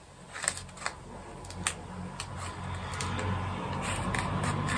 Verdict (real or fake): real